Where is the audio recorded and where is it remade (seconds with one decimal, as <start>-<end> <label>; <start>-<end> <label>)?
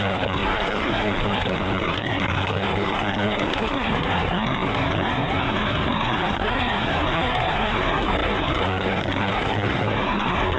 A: 0.0-10.6 remade